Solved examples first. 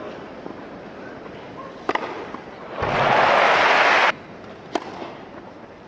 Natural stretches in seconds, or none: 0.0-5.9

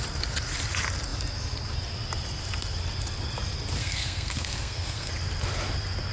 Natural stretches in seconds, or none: 0.0-3.8; 5.1-6.1